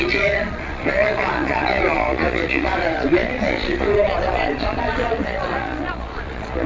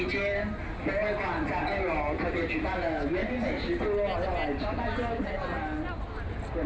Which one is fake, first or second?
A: first